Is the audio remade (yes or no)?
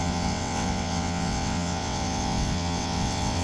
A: yes